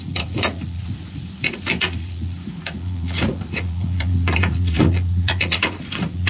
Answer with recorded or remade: remade